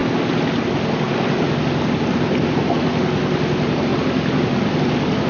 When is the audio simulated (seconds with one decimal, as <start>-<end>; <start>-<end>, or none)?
none